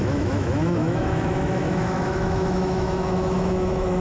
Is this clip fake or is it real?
fake